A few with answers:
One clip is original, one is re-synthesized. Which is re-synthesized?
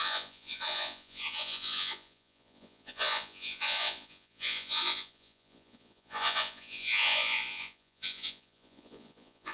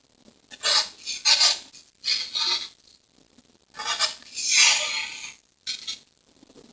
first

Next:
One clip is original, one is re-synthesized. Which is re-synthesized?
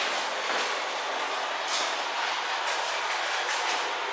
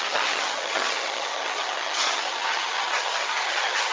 second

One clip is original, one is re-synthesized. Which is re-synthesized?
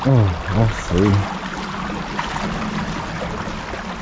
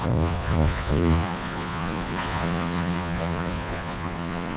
second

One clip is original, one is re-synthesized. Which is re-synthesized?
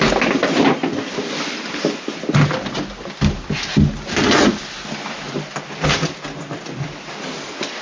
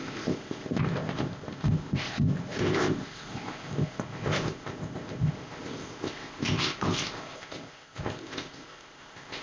second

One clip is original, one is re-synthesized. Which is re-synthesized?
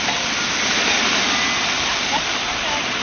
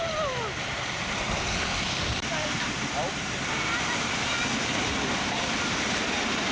second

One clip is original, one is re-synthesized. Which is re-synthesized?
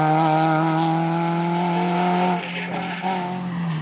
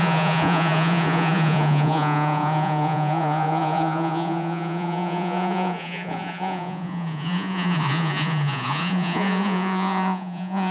second